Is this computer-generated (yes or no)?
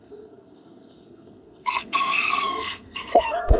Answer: yes